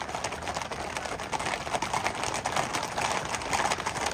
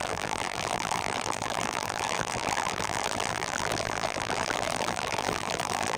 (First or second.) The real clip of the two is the first